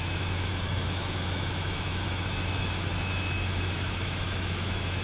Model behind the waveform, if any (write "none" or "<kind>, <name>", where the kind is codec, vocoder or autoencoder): autoencoder, DAC-VAE